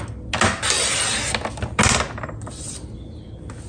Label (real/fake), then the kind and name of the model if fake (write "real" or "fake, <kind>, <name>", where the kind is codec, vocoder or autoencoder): real